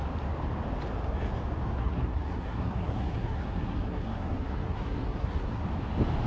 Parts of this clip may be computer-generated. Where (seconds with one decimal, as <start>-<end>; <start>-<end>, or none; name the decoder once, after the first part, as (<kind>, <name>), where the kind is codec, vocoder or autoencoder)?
1.8-5.6 (codec, SNAC)